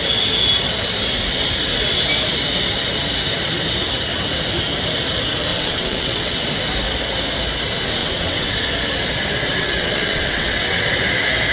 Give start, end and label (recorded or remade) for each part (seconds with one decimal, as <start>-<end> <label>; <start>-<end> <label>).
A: 0.0-5.5 recorded; 5.5-6.4 remade; 6.4-8.0 recorded; 8.0-8.5 remade; 8.5-9.6 recorded; 9.6-10.8 remade; 10.8-11.5 recorded